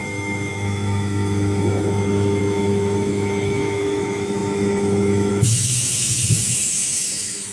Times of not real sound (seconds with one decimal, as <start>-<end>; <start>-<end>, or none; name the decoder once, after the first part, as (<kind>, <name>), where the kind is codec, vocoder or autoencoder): 0.0-7.5 (autoencoder, DAC-VAE)